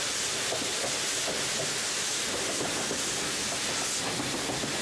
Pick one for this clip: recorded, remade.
recorded